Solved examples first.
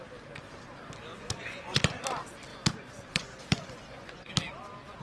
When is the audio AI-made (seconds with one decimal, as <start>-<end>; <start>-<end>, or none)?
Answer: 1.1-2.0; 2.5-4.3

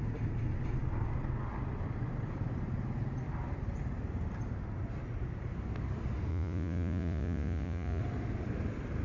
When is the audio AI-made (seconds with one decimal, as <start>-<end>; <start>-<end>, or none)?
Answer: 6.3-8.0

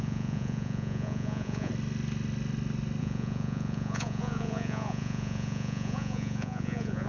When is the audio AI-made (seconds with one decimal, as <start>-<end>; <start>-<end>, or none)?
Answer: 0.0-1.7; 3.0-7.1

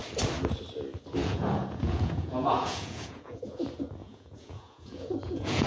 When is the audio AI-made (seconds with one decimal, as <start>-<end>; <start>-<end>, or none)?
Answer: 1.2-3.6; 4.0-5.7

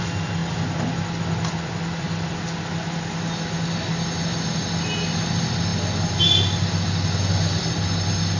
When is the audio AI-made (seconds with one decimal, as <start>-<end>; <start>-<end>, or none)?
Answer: none

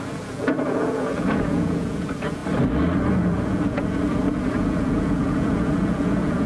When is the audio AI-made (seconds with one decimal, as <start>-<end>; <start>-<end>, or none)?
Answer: 0.0-2.4; 3.1-6.5